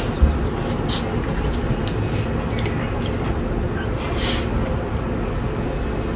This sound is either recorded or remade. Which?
recorded